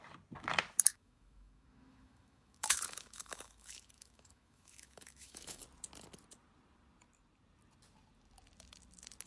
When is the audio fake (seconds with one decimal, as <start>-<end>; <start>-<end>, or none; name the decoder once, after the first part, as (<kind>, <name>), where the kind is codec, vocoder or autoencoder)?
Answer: 0.9-5.6 (autoencoder, DAC-VAE)